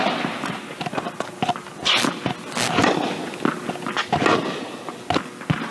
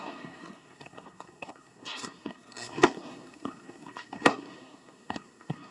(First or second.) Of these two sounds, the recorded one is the first